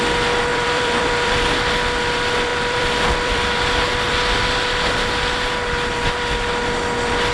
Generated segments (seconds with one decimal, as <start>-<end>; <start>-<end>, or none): 0.5-1.4; 2.5-3.5